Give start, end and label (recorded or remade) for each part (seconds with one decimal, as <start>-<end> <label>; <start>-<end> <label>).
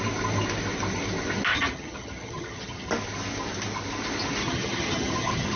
0.0-1.5 recorded; 1.5-2.9 remade; 2.9-4.4 recorded; 4.4-5.6 remade